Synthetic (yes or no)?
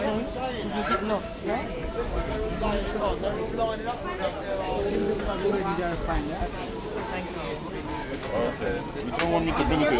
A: no